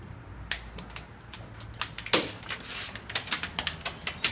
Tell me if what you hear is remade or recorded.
recorded